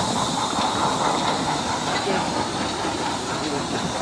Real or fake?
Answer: real